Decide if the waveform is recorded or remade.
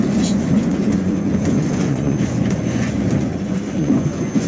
remade